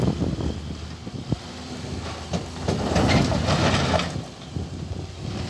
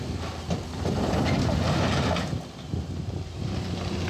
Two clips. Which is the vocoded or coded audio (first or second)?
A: second